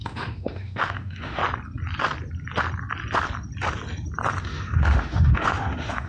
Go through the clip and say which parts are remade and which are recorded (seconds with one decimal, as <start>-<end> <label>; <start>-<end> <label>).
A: 0.0-1.4 remade; 1.4-4.4 recorded; 4.4-6.1 remade

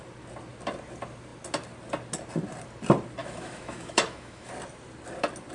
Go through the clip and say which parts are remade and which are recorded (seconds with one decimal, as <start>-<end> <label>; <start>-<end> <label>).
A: 0.0-3.2 recorded; 3.2-4.5 remade; 4.5-5.5 recorded

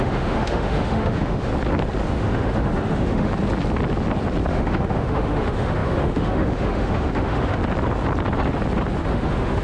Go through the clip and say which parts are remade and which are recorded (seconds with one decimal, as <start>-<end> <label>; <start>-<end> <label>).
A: 0.0-1.5 remade; 1.5-2.1 recorded; 2.1-3.3 remade; 3.3-4.5 recorded; 4.5-7.6 remade; 7.6-9.0 recorded; 9.0-9.6 remade

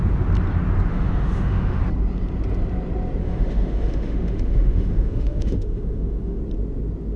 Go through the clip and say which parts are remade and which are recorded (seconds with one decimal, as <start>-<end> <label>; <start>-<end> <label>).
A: 0.0-0.9 recorded; 0.9-1.8 remade; 1.8-3.2 recorded; 3.2-6.4 remade; 6.4-7.2 recorded

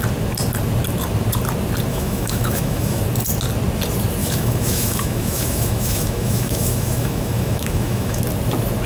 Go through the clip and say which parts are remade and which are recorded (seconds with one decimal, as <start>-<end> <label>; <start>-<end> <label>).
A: 0.0-1.9 recorded; 1.9-3.0 remade; 3.0-4.2 recorded; 4.2-8.2 remade; 8.2-8.9 recorded